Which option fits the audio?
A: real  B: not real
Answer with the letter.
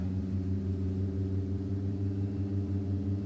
B